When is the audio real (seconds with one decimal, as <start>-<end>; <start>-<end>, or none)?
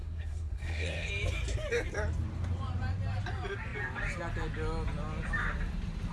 1.1-6.1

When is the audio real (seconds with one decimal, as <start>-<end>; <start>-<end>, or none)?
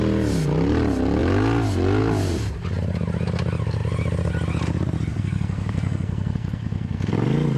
0.0-5.1; 7.1-7.6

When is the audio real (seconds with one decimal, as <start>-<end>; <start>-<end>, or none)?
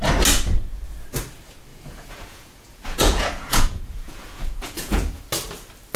0.0-1.7; 5.2-6.0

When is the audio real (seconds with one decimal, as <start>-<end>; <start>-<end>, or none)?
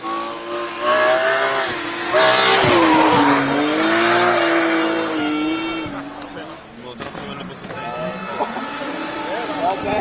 0.0-9.0; 9.6-10.0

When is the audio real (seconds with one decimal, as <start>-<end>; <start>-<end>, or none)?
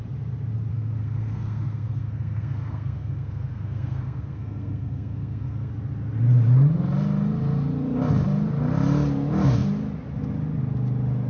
0.0-0.7; 5.7-11.3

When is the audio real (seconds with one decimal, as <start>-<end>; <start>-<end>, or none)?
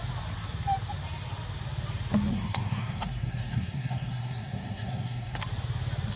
0.0-2.3; 5.4-6.2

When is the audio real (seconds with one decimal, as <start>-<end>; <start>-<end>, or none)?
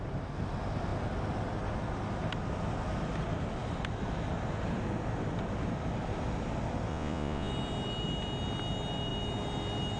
0.0-6.9; 7.5-10.0